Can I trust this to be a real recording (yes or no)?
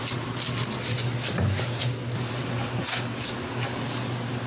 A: yes